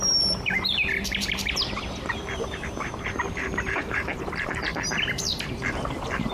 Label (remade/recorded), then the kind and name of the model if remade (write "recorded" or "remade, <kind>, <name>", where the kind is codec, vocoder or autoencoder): remade, vocoder, BigVGAN v2